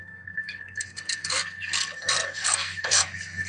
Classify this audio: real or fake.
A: fake